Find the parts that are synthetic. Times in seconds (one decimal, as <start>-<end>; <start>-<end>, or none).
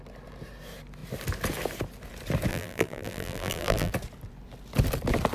2.5-3.9